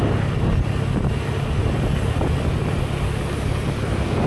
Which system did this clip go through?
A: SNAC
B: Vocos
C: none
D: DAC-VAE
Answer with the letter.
C